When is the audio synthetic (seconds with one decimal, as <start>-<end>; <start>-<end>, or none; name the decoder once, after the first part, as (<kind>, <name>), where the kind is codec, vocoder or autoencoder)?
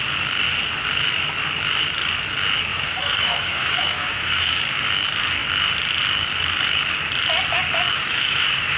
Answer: 2.7-4.6 (autoencoder, DAC-VAE); 7.9-8.8